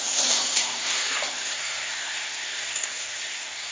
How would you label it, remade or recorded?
remade